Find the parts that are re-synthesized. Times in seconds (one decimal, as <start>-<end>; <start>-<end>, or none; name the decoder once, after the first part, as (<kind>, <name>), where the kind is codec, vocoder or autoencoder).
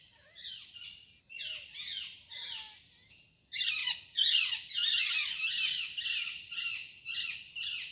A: 3.8-4.7 (vocoder, Vocos)